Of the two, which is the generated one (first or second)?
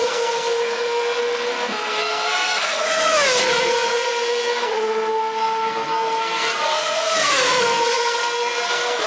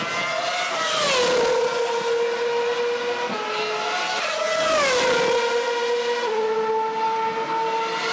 first